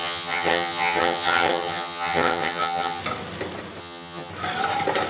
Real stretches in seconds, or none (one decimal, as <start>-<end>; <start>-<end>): 3.0-3.8; 4.3-5.1